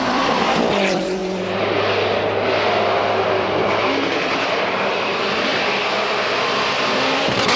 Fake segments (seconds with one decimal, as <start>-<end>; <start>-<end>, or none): 0.0-1.2; 3.3-5.5; 6.0-7.6